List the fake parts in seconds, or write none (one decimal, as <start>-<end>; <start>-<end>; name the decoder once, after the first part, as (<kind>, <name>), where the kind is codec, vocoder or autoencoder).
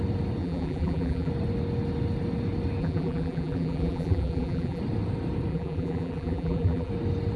0.4-1.3 (vocoder, BigVGAN v2); 2.8-4.8; 5.5-6.9